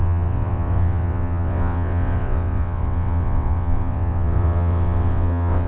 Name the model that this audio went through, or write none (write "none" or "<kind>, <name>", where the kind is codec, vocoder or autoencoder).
vocoder, WaveNeXt